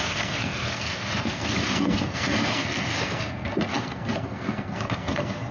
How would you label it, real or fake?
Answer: fake